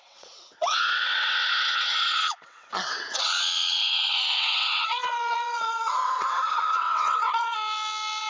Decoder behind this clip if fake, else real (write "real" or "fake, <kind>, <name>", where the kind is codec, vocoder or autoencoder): fake, vocoder, WaveNeXt